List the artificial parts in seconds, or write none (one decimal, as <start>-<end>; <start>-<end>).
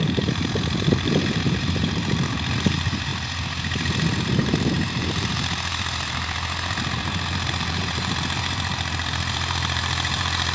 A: 0.0-3.1; 4.2-10.5